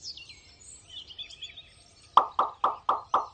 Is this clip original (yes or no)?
yes